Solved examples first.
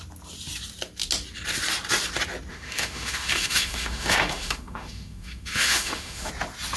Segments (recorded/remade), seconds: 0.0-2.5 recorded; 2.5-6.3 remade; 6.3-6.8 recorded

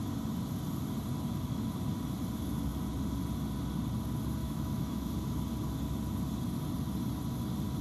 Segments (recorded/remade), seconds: 0.0-4.4 recorded; 4.4-5.1 remade; 5.1-7.8 recorded